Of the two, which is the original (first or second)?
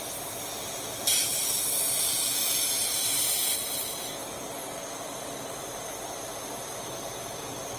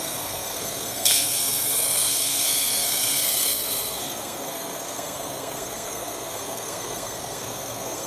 first